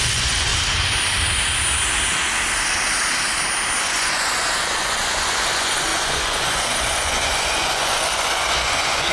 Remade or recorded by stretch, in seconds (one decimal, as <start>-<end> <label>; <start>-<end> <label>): 0.0-0.5 remade; 0.5-3.8 recorded; 3.8-9.1 remade